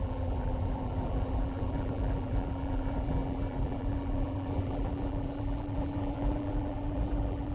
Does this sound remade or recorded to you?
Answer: remade